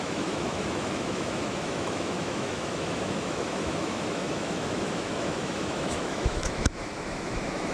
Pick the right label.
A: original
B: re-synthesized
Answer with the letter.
B